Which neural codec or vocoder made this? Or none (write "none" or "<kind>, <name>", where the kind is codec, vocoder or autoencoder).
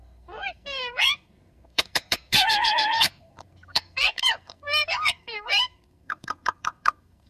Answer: codec, SNAC